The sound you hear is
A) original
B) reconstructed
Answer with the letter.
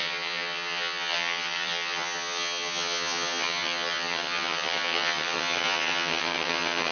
B